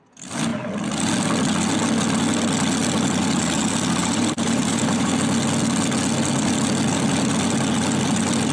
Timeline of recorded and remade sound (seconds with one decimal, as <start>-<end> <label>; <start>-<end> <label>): 0.0-4.0 recorded; 4.0-5.1 remade; 5.1-8.5 recorded